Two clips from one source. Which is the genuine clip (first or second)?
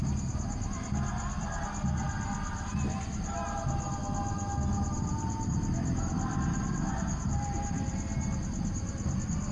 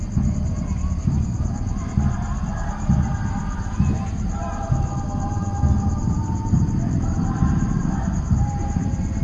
first